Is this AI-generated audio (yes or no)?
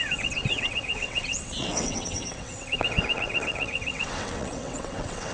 yes